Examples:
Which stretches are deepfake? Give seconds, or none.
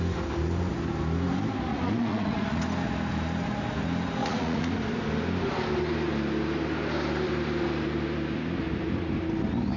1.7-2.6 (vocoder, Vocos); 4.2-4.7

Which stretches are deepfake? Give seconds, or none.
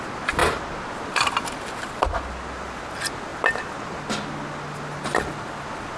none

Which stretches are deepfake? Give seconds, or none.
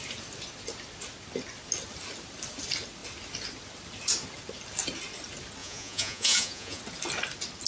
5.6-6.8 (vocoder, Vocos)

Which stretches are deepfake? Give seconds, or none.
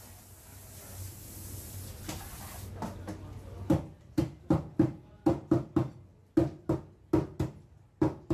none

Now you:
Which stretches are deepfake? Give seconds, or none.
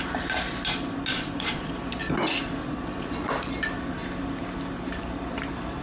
1.1-1.7 (vocoder, Vocos); 2.6-3.3